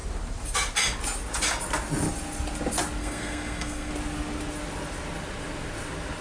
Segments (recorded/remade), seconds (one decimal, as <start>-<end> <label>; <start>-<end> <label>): 0.0-3.0 recorded; 3.0-3.9 remade; 3.9-6.2 recorded